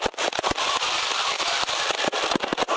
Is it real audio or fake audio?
fake